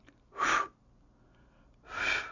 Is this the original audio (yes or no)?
yes